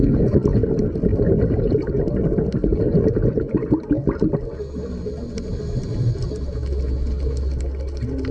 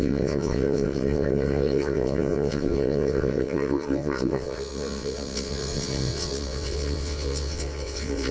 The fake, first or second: second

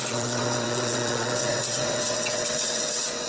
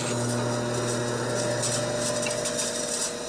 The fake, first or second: first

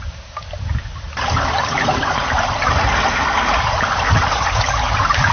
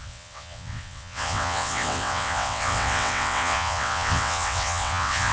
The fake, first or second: second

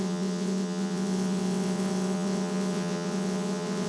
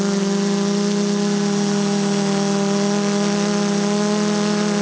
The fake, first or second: first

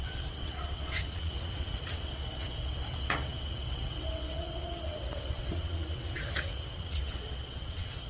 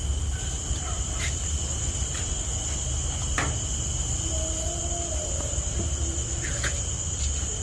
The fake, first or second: first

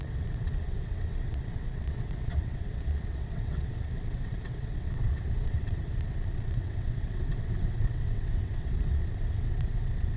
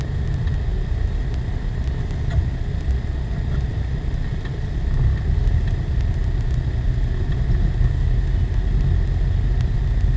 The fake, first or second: first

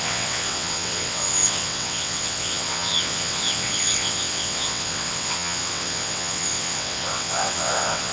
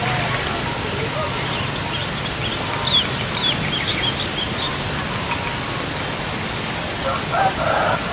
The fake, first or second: first